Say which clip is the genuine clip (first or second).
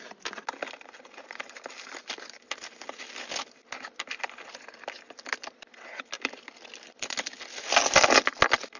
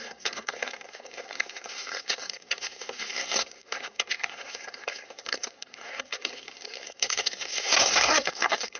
first